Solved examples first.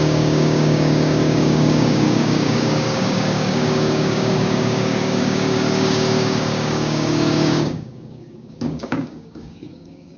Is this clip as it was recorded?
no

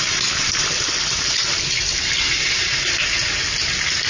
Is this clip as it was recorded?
yes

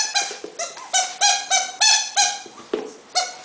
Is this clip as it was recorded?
yes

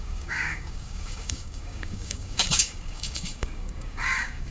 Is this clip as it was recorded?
no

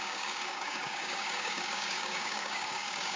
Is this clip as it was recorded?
no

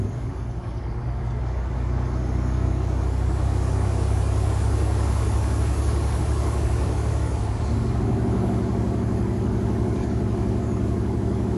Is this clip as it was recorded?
no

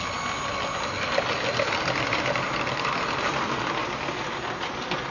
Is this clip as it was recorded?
yes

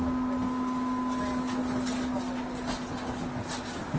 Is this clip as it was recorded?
yes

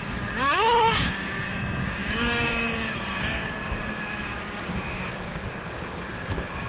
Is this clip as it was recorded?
no